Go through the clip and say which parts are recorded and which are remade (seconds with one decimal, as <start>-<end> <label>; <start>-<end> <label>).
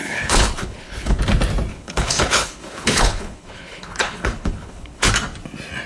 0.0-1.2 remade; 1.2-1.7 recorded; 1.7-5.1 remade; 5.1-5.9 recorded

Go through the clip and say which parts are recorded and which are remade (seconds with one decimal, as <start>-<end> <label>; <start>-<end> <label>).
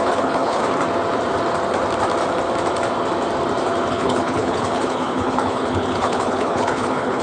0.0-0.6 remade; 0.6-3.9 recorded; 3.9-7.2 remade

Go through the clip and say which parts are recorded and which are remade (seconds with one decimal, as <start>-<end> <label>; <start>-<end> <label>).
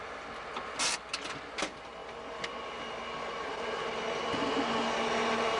0.0-5.6 recorded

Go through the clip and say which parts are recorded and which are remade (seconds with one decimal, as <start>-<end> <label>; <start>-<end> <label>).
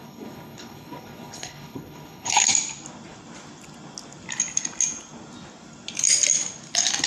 0.0-2.5 remade; 2.5-7.1 recorded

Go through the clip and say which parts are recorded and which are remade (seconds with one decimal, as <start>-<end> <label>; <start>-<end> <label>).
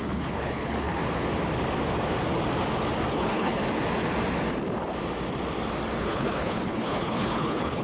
0.0-1.0 remade; 1.0-3.1 recorded; 3.1-3.6 remade; 3.6-6.0 recorded; 6.0-7.8 remade